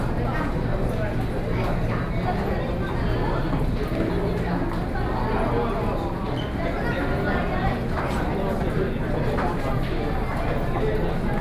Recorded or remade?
recorded